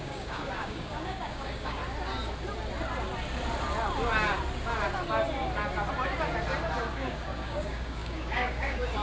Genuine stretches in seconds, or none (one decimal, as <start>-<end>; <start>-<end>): 1.8-6.9